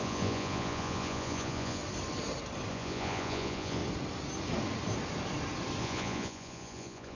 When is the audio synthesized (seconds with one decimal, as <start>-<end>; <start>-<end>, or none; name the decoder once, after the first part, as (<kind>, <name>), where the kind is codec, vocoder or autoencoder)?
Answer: 0.0-1.8 (vocoder, Vocos); 2.7-3.8; 5.8-7.1